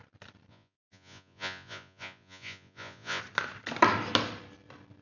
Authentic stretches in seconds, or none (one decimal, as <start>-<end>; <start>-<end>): 0.0-0.5; 3.2-5.0